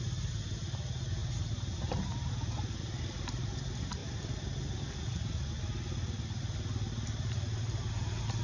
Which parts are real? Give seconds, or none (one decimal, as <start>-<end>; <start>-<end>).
1.2-2.8